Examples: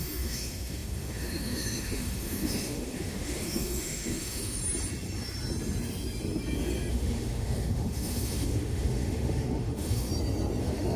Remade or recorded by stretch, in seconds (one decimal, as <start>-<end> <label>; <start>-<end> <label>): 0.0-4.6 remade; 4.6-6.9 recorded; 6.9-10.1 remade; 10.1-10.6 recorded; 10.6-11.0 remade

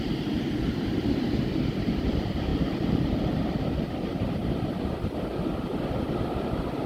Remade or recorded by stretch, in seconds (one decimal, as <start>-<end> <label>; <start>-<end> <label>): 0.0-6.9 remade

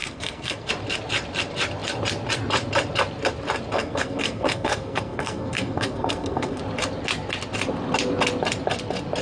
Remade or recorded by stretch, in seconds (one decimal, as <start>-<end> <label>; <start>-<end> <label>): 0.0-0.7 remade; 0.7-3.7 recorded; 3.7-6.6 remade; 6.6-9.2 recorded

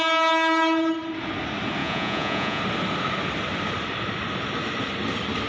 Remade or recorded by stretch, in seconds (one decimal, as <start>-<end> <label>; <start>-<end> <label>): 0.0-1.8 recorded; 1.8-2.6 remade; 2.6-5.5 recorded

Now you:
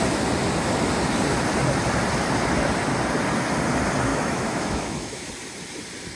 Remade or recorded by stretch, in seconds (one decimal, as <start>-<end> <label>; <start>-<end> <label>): 0.0-4.1 recorded; 4.1-5.3 remade; 5.3-6.2 recorded

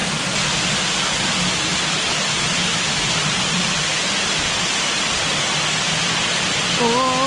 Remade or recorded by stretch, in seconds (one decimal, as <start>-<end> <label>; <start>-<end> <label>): 0.0-7.3 recorded